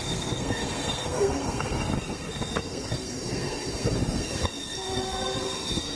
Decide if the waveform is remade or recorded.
remade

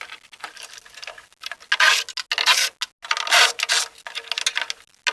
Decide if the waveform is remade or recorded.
recorded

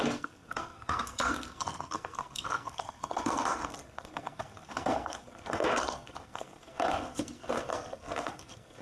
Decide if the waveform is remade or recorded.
remade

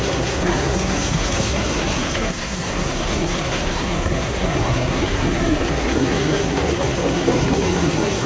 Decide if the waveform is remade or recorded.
remade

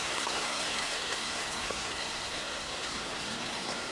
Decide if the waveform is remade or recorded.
remade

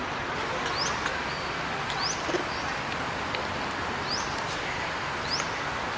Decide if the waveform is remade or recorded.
recorded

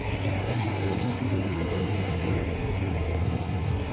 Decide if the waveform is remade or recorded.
remade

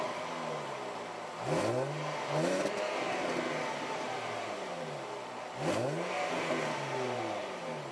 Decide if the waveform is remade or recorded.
recorded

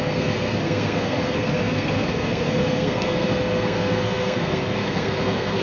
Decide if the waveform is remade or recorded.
remade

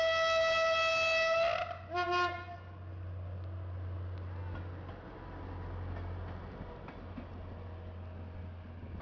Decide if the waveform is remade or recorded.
recorded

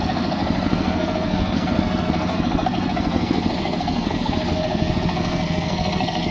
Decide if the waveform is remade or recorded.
remade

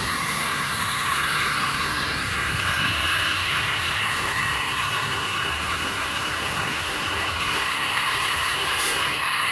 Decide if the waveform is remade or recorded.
remade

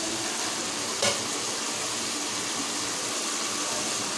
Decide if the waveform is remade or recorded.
recorded